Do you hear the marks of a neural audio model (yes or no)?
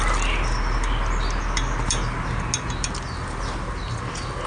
no